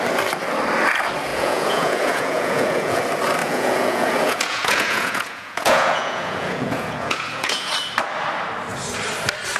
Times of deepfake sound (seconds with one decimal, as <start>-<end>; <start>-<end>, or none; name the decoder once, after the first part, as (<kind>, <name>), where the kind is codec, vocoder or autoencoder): 1.3-3.0 (vocoder, Vocos); 3.4-7.7